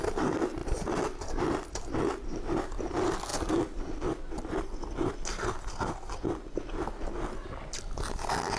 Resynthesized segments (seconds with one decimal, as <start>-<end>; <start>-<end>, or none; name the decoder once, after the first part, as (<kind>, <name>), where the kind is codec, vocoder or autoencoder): 0.6-1.4 (vocoder, BigVGAN v2)

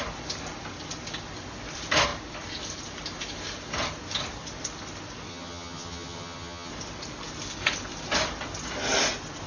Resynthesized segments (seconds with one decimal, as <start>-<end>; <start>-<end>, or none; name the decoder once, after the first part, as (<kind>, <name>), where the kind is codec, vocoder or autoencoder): 5.3-6.7 (vocoder, HiFi-GAN)

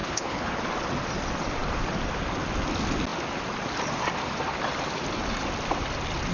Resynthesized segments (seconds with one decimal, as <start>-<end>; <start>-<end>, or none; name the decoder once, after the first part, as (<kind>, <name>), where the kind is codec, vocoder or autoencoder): 0.0-0.6 (codec, HILCodec)